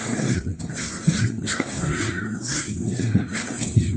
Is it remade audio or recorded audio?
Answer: remade